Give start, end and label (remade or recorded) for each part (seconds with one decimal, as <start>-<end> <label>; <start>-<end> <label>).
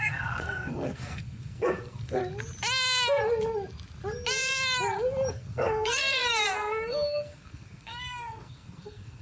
0.0-2.2 remade; 2.2-5.3 recorded; 5.3-9.2 remade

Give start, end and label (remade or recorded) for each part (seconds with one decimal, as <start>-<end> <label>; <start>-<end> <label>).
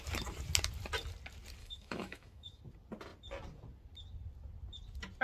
0.0-1.6 recorded; 1.6-2.6 remade; 2.6-5.2 recorded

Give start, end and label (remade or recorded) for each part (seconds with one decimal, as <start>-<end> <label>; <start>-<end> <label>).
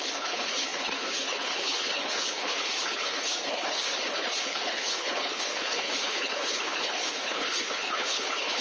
0.0-8.6 remade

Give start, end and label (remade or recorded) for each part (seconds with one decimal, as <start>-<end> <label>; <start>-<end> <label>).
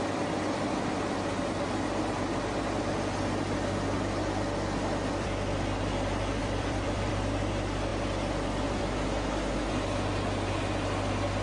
0.0-6.4 recorded; 6.4-7.1 remade; 7.1-11.4 recorded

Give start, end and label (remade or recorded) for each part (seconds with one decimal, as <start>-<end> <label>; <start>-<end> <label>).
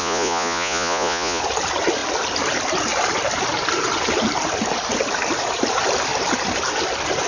0.0-1.4 remade; 1.4-7.3 recorded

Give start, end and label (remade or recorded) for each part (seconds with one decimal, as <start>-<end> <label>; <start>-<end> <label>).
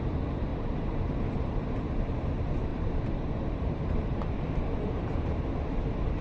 0.0-0.5 recorded; 0.5-1.4 remade; 1.4-2.7 recorded; 2.7-4.3 remade; 4.3-6.2 recorded